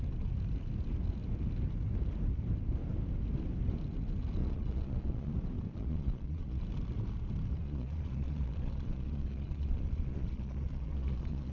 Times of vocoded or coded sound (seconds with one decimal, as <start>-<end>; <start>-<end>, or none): 4.4-5.3; 5.7-6.6; 7.6-11.5